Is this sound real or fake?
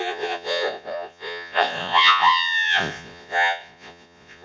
fake